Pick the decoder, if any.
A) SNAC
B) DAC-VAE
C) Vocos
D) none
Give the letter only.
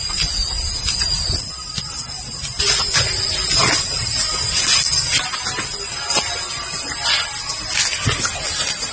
D